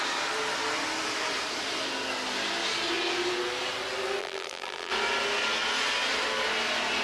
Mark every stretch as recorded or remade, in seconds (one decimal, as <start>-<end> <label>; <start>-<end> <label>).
0.0-4.2 recorded; 4.2-4.9 remade; 4.9-7.0 recorded